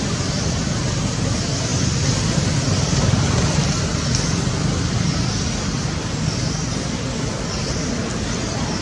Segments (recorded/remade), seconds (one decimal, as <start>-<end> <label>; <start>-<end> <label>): 0.0-8.8 recorded